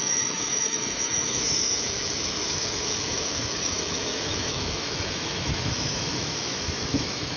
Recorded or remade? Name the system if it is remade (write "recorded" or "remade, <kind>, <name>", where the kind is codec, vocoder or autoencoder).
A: remade, autoencoder, DAC-VAE